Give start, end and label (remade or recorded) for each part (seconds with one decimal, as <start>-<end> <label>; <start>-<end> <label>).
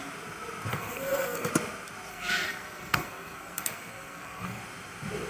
0.0-0.7 recorded; 0.7-1.5 remade; 1.5-2.1 recorded; 2.1-4.6 remade; 4.6-5.3 recorded